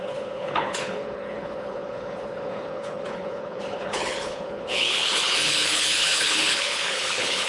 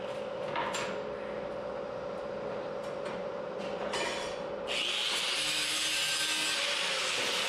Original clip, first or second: second